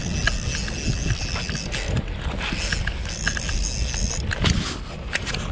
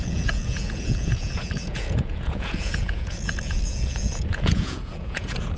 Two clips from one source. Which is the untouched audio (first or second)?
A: first